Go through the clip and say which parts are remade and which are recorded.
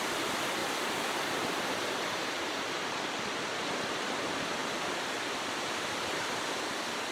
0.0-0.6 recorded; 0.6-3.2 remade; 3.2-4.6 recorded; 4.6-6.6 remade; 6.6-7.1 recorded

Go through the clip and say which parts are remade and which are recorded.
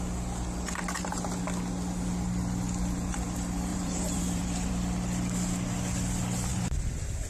0.0-3.7 recorded; 3.7-4.7 remade; 4.7-6.5 recorded; 6.5-7.3 remade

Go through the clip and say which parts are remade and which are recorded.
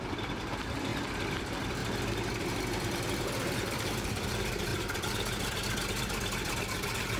0.0-0.9 remade; 0.9-1.4 recorded; 1.4-1.8 remade; 1.8-2.5 recorded; 2.5-4.7 remade; 4.7-5.9 recorded; 5.9-7.2 remade